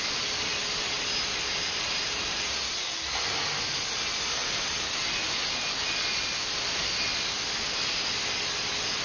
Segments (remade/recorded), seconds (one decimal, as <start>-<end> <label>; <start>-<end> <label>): 0.0-9.0 recorded